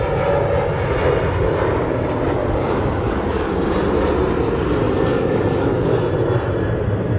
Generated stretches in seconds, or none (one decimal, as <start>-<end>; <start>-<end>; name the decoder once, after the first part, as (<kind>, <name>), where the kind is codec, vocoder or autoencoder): 2.4-3.5 (codec, DAC); 5.1-6.0